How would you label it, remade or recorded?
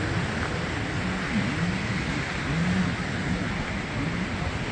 recorded